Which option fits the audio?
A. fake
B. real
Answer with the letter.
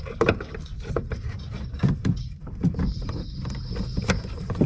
A